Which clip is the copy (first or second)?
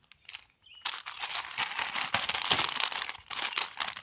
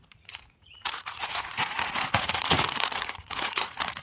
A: second